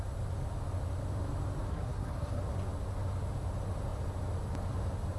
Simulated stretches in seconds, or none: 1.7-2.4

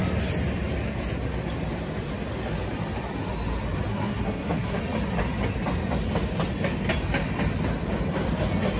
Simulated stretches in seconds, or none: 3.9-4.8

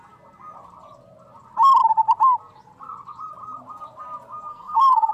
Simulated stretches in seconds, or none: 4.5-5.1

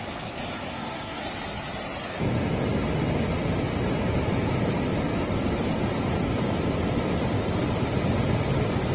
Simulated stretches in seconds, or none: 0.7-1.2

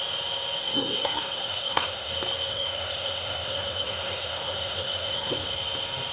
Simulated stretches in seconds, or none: 0.6-2.1; 2.5-5.3